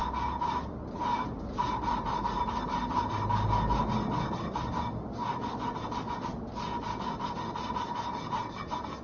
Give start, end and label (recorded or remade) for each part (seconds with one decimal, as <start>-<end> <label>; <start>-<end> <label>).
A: 0.0-0.7 remade; 0.7-1.2 recorded; 1.2-3.1 remade; 3.1-9.0 recorded